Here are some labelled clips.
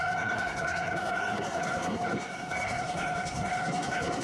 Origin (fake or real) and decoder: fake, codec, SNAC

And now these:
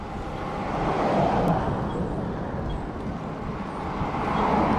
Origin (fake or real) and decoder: real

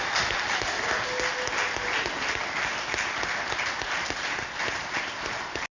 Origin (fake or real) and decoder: real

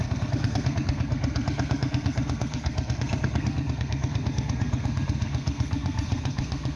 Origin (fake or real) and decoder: fake, codec, SNAC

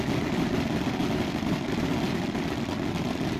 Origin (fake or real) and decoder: real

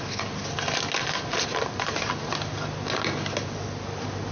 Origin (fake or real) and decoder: real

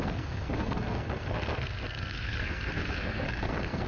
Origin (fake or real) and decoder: fake, codec, SNAC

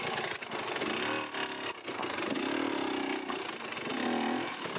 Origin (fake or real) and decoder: real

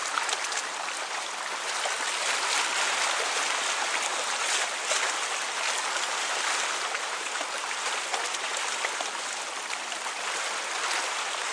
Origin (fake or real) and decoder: real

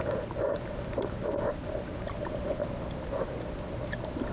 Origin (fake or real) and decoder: real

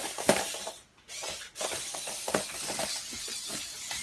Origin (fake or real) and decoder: real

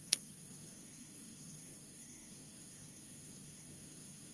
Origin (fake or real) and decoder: fake, codec, SNAC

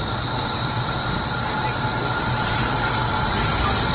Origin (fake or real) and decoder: real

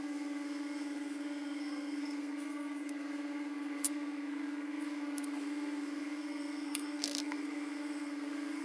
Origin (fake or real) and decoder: fake, codec, SNAC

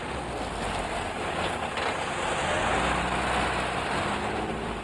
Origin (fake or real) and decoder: real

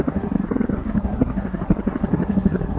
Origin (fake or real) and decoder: fake, codec, SNAC